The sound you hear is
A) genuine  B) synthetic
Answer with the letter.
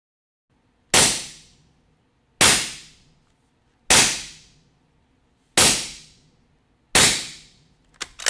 A